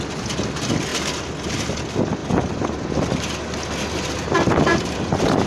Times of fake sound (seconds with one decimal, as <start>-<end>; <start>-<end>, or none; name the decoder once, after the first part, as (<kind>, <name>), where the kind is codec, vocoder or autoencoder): 4.7-5.5 (vocoder, BigVGAN v2)